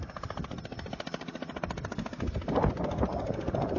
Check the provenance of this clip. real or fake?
real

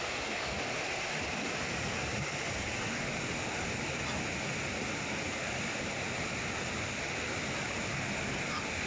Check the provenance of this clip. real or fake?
real